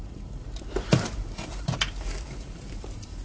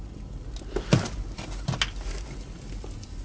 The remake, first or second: first